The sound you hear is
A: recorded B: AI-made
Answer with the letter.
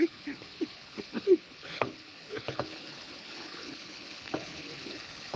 B